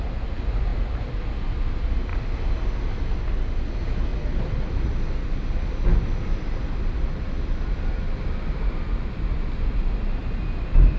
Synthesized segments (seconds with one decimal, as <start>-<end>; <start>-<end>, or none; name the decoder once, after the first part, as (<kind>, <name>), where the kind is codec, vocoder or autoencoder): none